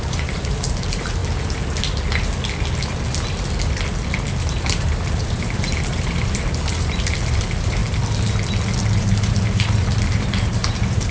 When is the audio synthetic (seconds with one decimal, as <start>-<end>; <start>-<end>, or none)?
0.0-1.2; 4.4-7.8; 9.0-11.1